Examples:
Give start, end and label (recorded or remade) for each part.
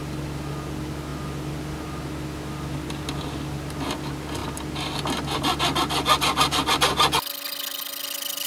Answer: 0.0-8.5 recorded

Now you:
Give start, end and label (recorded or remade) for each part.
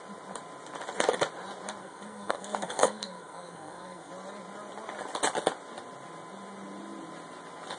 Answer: 0.0-1.8 recorded; 1.8-4.1 remade; 4.1-7.8 recorded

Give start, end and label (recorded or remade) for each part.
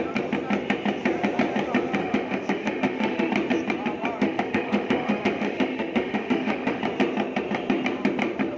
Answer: 0.0-2.0 recorded; 2.0-3.3 remade; 3.3-4.2 recorded; 4.2-6.8 remade; 6.8-8.6 recorded